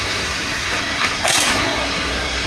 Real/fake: fake